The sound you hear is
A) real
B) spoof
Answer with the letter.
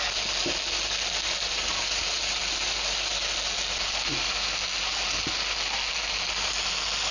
A